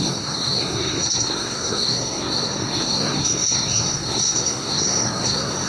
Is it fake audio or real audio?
fake